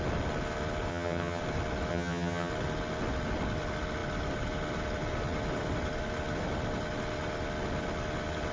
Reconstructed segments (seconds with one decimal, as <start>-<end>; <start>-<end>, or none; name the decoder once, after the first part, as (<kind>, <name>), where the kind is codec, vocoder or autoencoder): 0.9-1.4 (vocoder, HiFi-GAN); 1.9-2.5